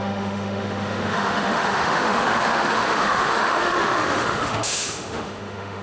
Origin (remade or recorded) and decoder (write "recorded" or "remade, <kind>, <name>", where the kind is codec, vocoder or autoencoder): remade, autoencoder, DAC-VAE